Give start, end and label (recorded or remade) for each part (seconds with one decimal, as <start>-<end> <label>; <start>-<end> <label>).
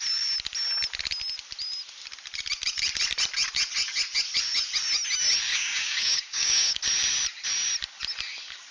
0.0-5.5 recorded; 5.5-6.8 remade; 6.8-8.7 recorded